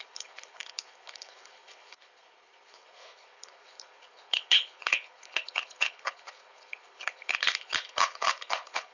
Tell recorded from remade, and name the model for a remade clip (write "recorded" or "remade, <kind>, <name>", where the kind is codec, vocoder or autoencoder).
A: remade, codec, HILCodec